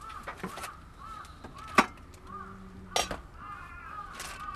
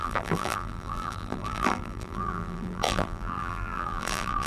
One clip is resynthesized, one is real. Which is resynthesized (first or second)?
second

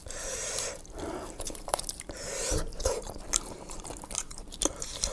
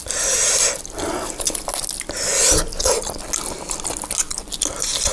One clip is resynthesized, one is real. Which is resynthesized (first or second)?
first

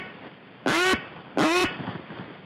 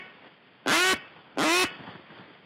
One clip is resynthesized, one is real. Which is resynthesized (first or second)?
first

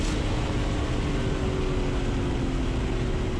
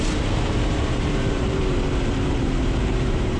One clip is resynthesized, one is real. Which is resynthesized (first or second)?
second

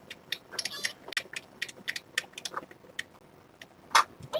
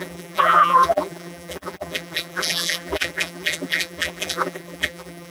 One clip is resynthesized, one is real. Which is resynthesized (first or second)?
second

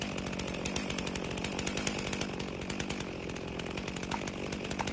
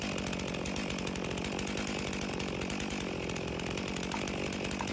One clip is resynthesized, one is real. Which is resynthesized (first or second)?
second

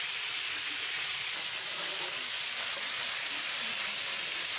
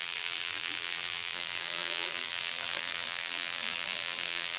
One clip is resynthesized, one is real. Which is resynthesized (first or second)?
second